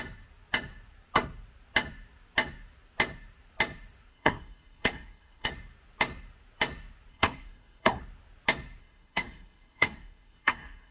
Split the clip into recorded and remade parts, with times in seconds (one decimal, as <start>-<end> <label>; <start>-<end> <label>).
0.0-4.1 recorded; 4.1-5.5 remade; 5.5-7.1 recorded; 7.1-8.0 remade; 8.0-8.8 recorded; 8.8-10.9 remade